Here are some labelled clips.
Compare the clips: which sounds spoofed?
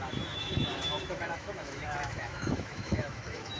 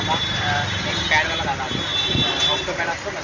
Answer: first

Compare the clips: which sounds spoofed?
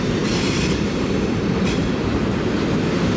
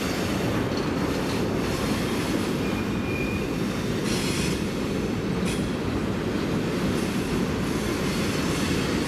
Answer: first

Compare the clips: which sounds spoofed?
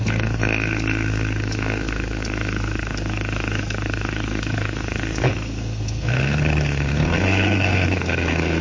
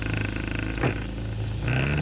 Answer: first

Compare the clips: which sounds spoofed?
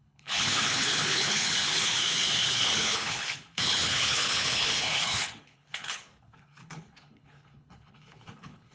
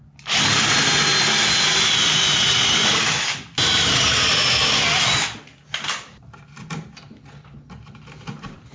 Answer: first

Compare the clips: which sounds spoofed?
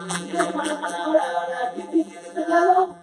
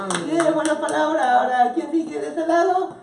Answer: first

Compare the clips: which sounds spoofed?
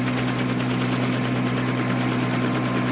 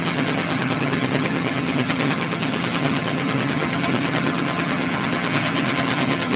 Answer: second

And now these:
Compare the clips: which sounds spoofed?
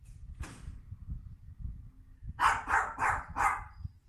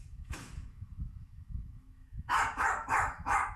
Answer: second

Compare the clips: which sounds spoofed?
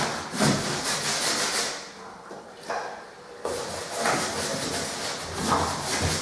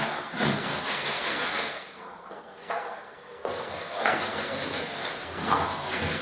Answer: second